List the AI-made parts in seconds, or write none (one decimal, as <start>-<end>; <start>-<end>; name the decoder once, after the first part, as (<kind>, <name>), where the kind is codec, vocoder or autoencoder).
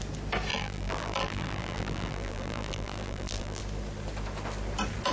0.5-3.6 (vocoder, BigVGAN v2)